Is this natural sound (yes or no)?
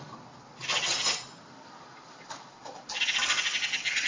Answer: yes